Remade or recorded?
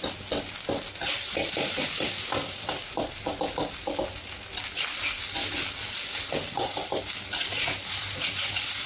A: recorded